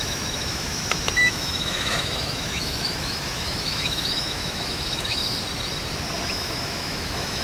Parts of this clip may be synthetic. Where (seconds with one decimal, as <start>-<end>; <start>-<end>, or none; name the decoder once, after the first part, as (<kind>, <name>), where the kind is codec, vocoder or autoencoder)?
0.0-5.2 (autoencoder, DAC-VAE); 6.3-7.4